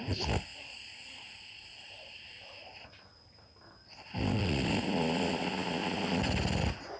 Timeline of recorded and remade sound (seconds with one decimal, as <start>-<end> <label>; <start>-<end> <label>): 0.0-5.8 remade; 5.8-6.4 recorded; 6.4-7.0 remade